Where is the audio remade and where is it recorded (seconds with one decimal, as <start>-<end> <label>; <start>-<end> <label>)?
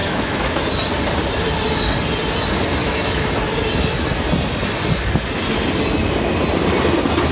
0.0-0.6 remade; 0.6-2.8 recorded; 2.8-3.3 remade; 3.3-7.3 recorded